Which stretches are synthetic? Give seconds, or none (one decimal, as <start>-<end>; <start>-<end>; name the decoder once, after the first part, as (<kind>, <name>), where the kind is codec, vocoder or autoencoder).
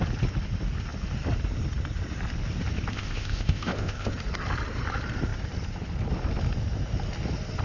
2.9-4.1 (codec, ZipCodec)